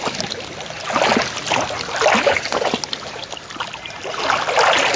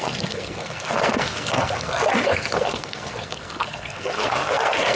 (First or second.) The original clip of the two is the first